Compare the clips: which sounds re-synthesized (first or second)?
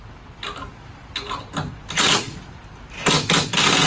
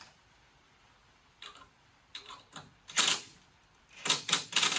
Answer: second